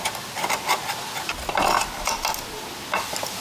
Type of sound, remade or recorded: recorded